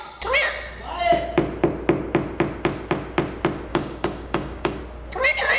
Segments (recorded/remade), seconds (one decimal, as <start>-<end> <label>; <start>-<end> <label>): 0.0-3.7 recorded; 3.7-4.8 remade; 4.8-5.6 recorded

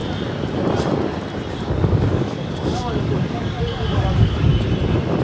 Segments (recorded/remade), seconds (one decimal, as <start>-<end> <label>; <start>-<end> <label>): 0.0-1.5 recorded; 1.5-4.5 remade; 4.5-5.2 recorded